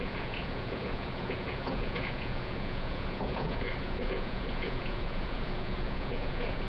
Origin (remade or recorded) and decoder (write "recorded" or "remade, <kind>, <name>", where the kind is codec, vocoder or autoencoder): remade, vocoder, Vocos